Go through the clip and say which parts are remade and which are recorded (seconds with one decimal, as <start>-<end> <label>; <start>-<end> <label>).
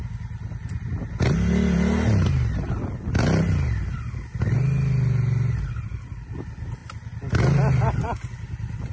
0.0-8.9 recorded